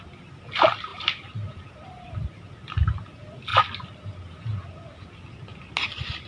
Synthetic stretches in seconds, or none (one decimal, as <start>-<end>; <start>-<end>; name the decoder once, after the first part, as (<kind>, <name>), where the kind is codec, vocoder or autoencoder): 0.9-1.6 (vocoder, BigVGAN v2)